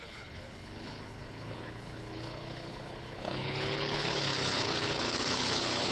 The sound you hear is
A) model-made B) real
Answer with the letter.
A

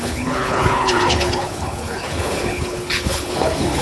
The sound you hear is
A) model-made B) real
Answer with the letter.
A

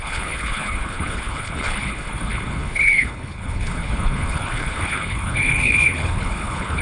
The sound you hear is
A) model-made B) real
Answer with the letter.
A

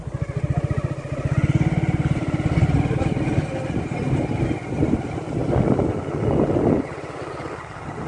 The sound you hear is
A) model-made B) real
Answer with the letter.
B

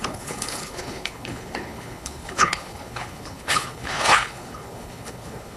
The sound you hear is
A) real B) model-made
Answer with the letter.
B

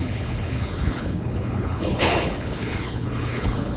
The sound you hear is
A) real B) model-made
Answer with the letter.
B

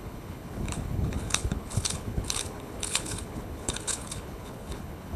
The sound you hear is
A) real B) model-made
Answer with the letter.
B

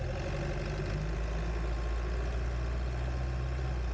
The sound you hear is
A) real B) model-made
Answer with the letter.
A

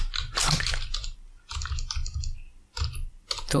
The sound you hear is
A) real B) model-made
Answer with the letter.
A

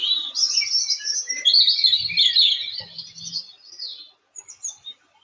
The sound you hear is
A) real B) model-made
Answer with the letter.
A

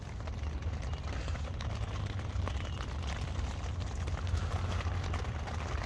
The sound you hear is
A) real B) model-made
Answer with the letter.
A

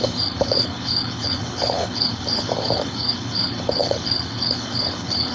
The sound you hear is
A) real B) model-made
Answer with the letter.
B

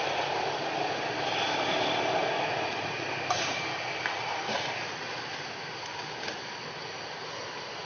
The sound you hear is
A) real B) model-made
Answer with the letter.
A